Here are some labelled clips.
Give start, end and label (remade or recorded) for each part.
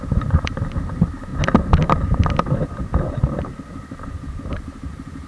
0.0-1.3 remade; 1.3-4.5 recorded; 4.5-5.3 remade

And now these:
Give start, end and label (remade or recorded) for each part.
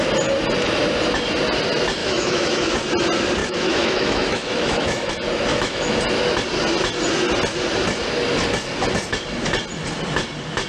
0.0-2.0 recorded; 2.0-2.7 remade; 2.7-3.4 recorded; 3.4-5.1 remade; 5.1-5.5 recorded; 5.5-6.0 remade; 6.0-10.7 recorded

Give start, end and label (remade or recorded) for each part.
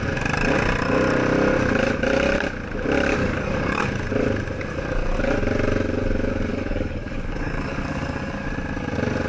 0.0-3.2 recorded; 3.2-3.8 remade; 3.8-6.5 recorded; 6.5-8.5 remade; 8.5-9.3 recorded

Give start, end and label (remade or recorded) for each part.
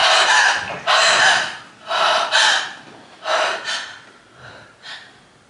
0.0-5.5 recorded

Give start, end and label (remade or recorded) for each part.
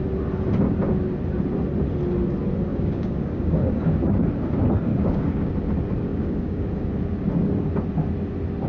0.0-2.7 recorded; 2.7-3.8 remade; 3.8-4.9 recorded; 4.9-5.5 remade; 5.5-6.1 recorded; 6.1-6.7 remade; 6.7-8.7 recorded